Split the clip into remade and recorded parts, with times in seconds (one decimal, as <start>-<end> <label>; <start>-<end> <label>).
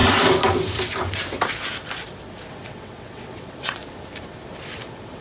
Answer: 0.0-2.5 recorded; 2.5-3.8 remade; 3.8-4.8 recorded; 4.8-5.2 remade